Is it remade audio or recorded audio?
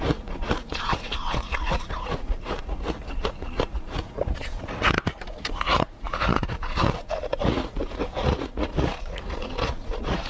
remade